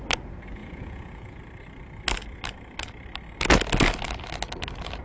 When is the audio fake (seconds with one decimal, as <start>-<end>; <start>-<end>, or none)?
0.6-1.4

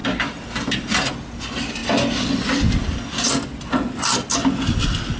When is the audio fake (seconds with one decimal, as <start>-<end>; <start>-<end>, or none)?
none

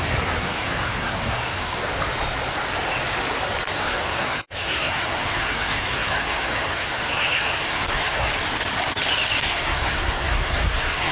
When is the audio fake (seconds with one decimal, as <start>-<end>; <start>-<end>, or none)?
0.0-1.7; 3.7-8.3; 9.4-11.1

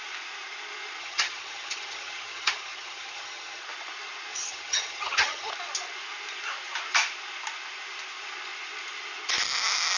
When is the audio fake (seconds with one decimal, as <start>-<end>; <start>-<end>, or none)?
1.0-3.6; 4.3-5.5

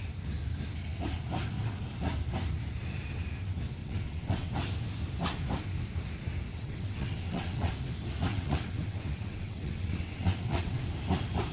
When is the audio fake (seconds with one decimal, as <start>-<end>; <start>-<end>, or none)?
3.8-4.5; 6.5-7.7; 8.3-10.8

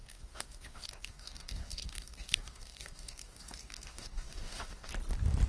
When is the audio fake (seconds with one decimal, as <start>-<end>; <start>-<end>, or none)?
0.0-4.9

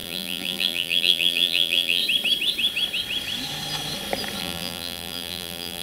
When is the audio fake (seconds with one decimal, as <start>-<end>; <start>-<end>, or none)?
0.0-2.0; 4.4-5.8